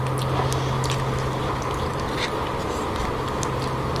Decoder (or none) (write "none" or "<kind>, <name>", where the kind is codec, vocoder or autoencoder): none